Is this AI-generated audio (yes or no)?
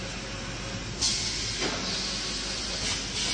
no